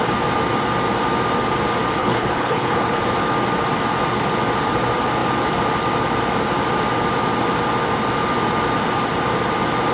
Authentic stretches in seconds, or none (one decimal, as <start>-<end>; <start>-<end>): 0.0-2.0; 3.0-9.9